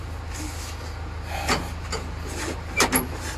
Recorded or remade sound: recorded